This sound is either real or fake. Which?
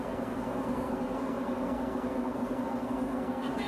fake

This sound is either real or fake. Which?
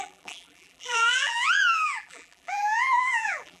fake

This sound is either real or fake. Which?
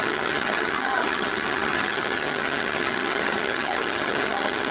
fake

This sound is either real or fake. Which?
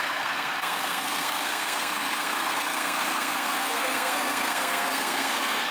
fake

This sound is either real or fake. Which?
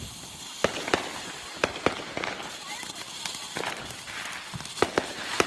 real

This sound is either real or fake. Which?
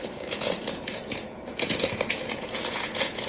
fake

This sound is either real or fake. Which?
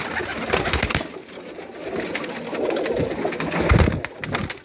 real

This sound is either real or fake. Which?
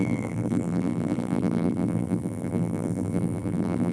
fake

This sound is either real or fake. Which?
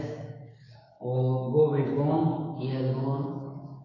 fake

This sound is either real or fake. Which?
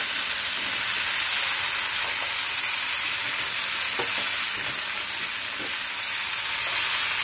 real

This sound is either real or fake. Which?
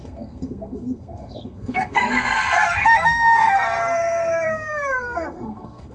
fake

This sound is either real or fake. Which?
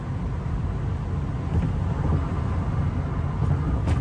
real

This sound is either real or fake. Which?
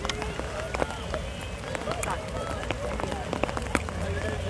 real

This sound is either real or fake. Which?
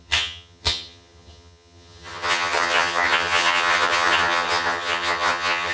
fake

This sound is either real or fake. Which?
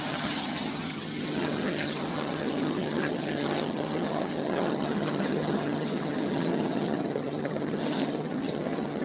fake